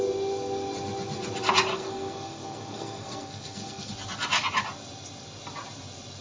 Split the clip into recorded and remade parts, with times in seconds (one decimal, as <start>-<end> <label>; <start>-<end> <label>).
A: 0.0-1.7 recorded; 1.7-3.9 remade; 3.9-6.2 recorded

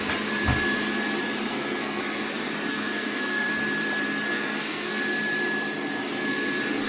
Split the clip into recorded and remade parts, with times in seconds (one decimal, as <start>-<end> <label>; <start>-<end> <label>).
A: 0.0-1.5 recorded; 1.5-2.0 remade; 2.0-2.7 recorded; 2.7-3.5 remade; 3.5-4.3 recorded; 4.3-5.0 remade; 5.0-6.9 recorded

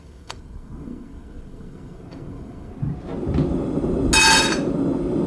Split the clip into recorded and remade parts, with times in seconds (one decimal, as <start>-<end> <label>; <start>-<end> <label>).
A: 0.0-2.7 remade; 2.7-5.3 recorded

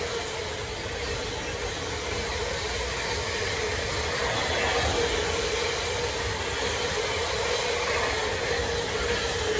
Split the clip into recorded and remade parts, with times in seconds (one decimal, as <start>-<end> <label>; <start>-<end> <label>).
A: 0.0-9.6 recorded

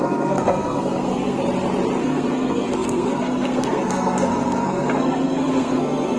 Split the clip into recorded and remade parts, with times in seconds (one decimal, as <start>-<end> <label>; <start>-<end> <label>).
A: 0.0-1.4 remade; 1.4-2.0 recorded; 2.0-6.2 remade

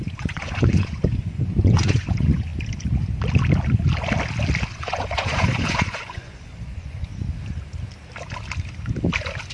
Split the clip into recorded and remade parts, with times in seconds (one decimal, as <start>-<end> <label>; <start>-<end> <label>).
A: 0.0-2.5 remade; 2.5-4.7 recorded; 4.7-7.1 remade; 7.1-9.5 recorded